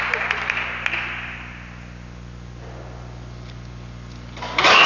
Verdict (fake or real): real